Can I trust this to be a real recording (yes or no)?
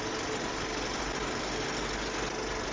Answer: yes